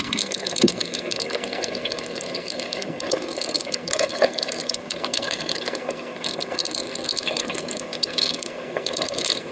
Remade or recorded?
remade